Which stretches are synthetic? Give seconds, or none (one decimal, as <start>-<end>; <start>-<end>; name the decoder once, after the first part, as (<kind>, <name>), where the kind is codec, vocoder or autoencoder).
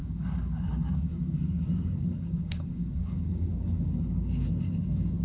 0.0-5.2 (codec, DAC)